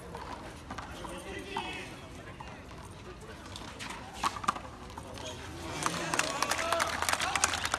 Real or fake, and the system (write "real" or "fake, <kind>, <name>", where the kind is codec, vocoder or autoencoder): real